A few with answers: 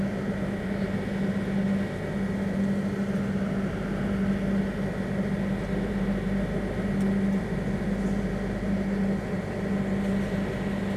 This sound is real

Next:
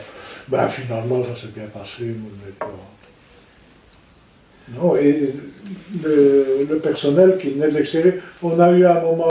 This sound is real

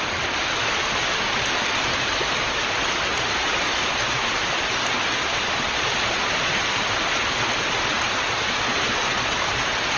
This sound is real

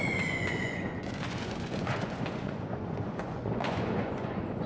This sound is fake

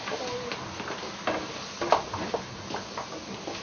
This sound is real